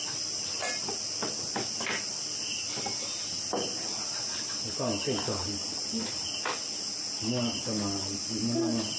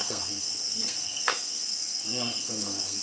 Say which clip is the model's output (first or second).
second